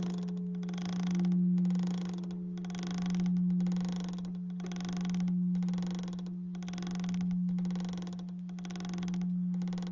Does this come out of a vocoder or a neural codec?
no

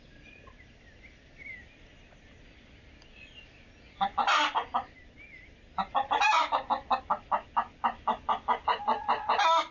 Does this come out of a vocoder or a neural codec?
no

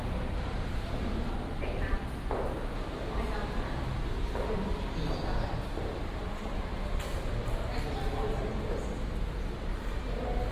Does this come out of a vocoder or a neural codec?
no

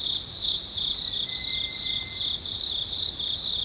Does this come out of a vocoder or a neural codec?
no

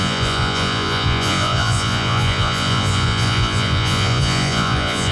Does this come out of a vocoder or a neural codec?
yes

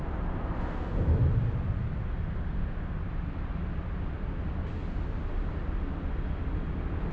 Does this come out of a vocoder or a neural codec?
no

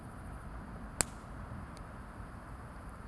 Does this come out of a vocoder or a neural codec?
no